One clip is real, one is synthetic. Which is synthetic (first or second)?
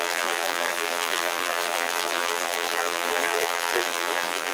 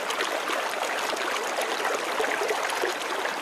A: first